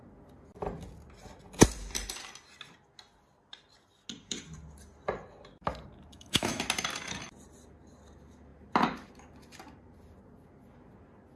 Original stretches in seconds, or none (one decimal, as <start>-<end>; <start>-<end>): 0.0-6.1; 6.6-11.4